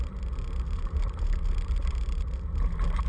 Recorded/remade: recorded